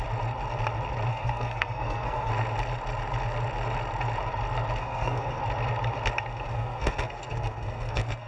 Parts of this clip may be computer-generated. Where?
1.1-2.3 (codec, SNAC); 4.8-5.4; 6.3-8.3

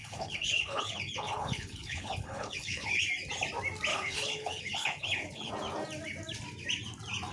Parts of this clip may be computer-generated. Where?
0.0-3.0 (codec, HILCodec); 3.9-5.5

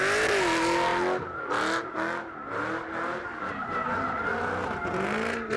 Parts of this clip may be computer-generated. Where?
none

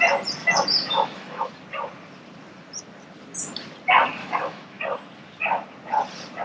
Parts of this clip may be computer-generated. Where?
0.4-1.5 (autoencoder, DAC-VAE); 4.2-4.8

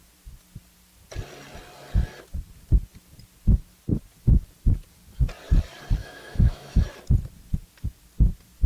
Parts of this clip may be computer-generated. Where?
6.0-6.8 (autoencoder, DAC-VAE)